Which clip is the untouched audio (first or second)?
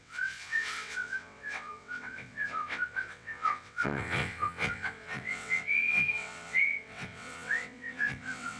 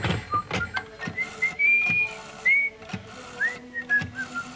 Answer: second